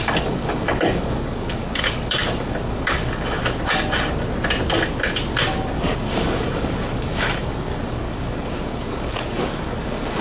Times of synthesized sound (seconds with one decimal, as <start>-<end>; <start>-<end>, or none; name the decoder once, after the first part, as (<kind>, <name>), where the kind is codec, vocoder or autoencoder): 0.0-3.4 (codec, DAC); 5.7-10.2